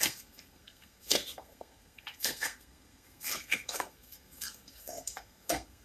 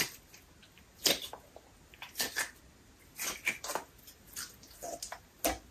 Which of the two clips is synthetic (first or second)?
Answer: first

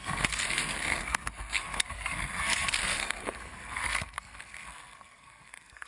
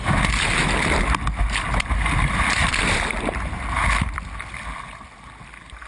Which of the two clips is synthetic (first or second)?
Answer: first